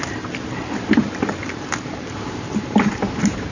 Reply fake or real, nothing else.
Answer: real